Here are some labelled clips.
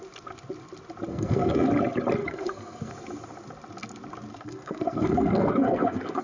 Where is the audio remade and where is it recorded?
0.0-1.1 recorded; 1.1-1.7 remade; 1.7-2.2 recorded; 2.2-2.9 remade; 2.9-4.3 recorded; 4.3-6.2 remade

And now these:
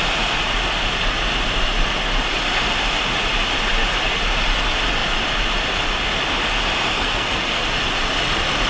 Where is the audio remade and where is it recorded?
0.0-6.9 recorded; 6.9-7.6 remade; 7.6-8.7 recorded

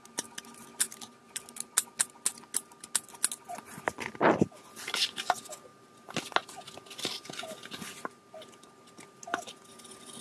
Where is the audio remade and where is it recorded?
0.0-10.2 recorded

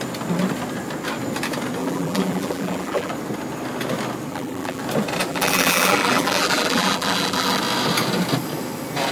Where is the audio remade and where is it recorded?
0.0-1.8 recorded; 1.8-3.1 remade; 3.1-4.3 recorded; 4.3-4.8 remade; 4.8-5.3 recorded; 5.3-7.6 remade; 7.6-9.1 recorded